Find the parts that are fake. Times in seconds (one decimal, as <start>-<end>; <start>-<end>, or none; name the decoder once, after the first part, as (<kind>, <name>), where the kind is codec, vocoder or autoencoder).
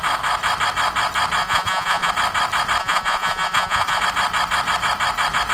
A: 1.4-2.1 (vocoder, Vocos); 2.8-4.0